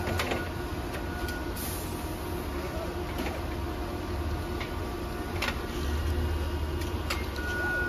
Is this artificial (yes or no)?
no